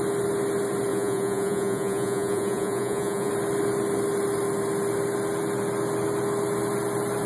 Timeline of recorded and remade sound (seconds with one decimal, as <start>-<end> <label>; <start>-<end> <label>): 0.0-0.9 recorded; 0.9-3.3 remade; 3.3-7.3 recorded

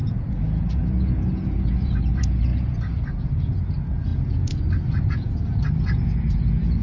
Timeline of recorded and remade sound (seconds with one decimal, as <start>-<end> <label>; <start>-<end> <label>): 0.0-6.8 remade

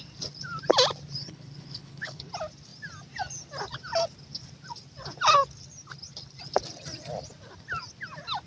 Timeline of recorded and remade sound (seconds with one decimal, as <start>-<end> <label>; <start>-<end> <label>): 0.0-1.2 recorded; 1.2-2.3 remade; 2.3-8.5 recorded

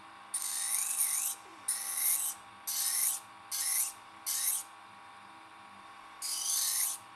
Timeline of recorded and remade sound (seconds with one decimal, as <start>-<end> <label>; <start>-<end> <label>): 0.0-7.2 recorded